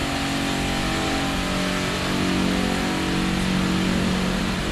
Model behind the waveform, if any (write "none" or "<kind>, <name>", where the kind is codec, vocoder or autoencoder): none